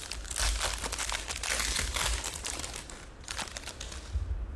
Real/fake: real